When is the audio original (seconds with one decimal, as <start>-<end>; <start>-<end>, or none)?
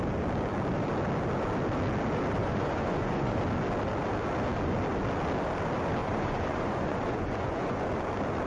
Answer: 0.0-2.4; 3.4-6.0; 7.8-8.5